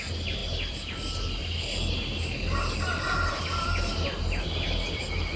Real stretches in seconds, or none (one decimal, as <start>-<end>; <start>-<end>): 0.0-5.4